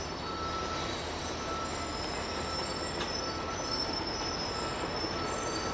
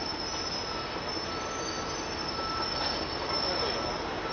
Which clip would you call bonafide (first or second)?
second